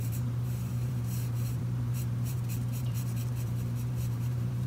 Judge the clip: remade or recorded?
remade